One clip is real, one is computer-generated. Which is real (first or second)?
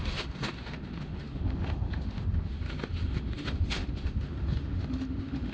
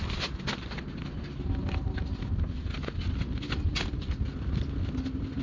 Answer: second